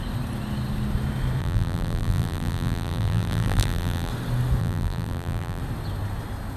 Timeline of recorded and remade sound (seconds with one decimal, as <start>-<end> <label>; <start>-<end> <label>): 0.0-1.4 recorded; 1.4-4.1 remade; 4.1-4.6 recorded; 4.6-5.6 remade; 5.6-6.6 recorded